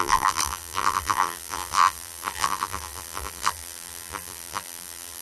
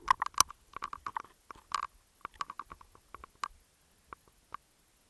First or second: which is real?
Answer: second